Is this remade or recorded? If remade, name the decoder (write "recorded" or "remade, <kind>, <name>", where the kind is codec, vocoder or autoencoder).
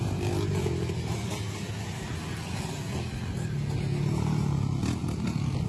recorded